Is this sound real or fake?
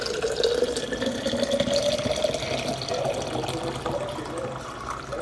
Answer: real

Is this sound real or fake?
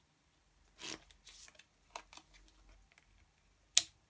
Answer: real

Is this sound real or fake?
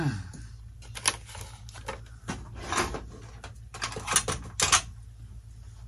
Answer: real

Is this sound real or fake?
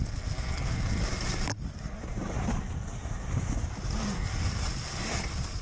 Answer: real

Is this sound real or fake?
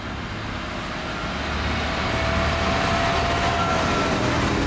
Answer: real